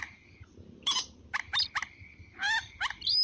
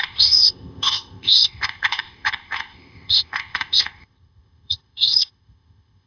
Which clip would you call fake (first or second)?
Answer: second